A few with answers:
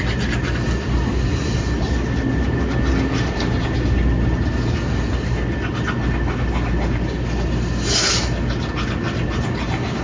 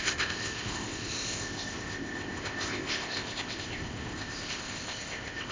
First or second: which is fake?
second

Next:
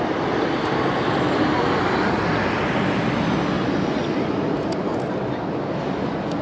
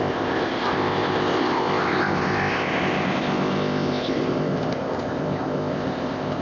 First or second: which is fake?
second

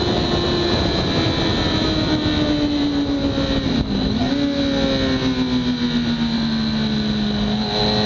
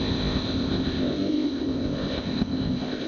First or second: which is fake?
second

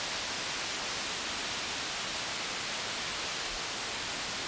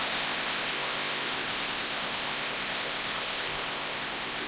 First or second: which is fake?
second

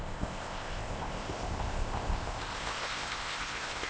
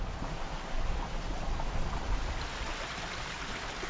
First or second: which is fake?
first